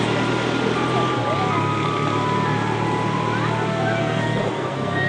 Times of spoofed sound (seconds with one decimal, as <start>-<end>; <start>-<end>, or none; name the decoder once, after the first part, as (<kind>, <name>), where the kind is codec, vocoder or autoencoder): 4.0-5.1 (codec, SNAC)